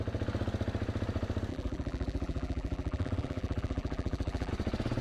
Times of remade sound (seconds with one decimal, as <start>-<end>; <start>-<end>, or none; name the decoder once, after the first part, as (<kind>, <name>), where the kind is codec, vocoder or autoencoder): 1.5-4.5 (vocoder, BigVGAN v2)